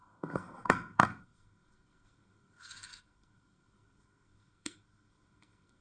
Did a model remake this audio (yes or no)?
yes